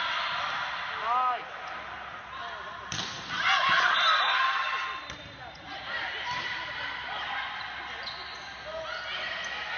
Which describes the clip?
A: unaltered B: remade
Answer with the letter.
A